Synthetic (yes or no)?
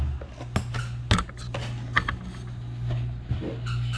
no